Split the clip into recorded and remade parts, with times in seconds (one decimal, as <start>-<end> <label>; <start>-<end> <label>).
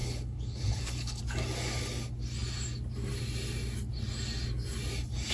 0.0-1.2 remade; 1.2-5.3 recorded